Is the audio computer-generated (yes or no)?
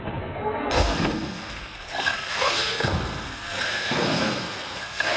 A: yes